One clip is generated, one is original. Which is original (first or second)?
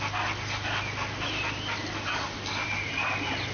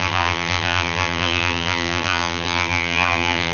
first